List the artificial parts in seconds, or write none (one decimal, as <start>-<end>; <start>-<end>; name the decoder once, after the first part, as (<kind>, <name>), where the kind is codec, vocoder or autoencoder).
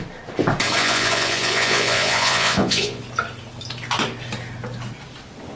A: 0.8-3.0 (vocoder, Vocos)